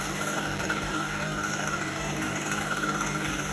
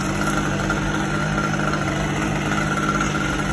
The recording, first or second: second